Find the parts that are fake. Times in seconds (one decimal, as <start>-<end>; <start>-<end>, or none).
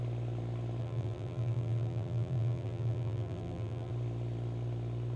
0.8-3.9